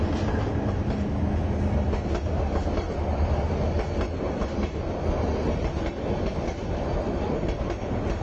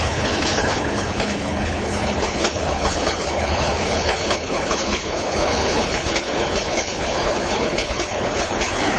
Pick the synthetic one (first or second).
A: second